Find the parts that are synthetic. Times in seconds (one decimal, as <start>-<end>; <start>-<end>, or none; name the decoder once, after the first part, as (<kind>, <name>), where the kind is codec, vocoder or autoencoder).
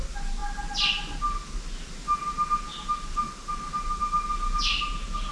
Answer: none